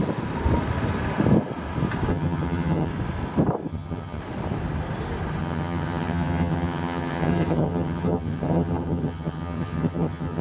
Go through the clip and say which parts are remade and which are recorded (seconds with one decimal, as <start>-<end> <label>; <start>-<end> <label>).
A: 0.0-2.1 recorded; 2.1-2.9 remade; 2.9-3.7 recorded; 3.7-4.2 remade; 4.2-5.4 recorded; 5.4-10.4 remade

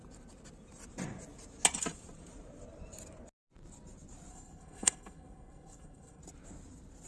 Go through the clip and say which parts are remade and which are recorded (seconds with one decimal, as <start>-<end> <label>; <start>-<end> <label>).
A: 0.0-4.3 recorded; 4.3-6.2 remade; 6.2-7.1 recorded